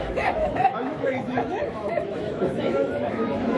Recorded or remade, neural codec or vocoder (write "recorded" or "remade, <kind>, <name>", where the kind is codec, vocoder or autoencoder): remade, autoencoder, DAC-VAE